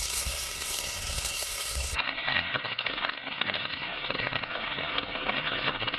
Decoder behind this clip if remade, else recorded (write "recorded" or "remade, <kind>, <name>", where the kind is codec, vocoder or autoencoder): remade, codec, SNAC